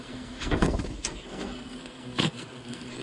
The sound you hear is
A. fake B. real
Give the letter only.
A